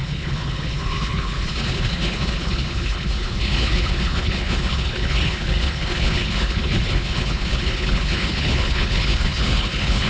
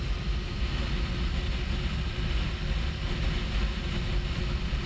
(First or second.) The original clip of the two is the second